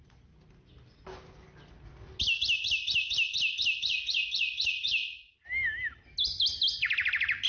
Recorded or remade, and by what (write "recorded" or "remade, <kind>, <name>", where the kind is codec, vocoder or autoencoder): recorded